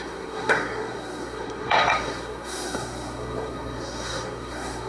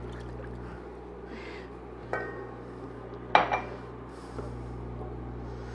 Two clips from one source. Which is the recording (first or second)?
second